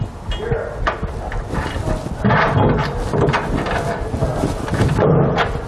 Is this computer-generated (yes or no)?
no